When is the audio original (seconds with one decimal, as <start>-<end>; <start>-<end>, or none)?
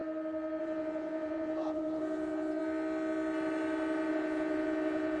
0.0-0.6; 2.6-4.1